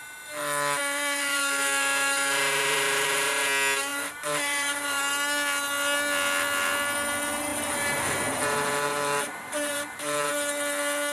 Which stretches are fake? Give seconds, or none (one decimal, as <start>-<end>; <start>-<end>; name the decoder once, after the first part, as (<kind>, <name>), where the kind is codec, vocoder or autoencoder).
0.8-3.3 (vocoder, BigVGAN v2); 3.9-5.0; 7.5-10.3